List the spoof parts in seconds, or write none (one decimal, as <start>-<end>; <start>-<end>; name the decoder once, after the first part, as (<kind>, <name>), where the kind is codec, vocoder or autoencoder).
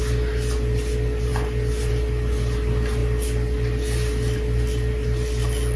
none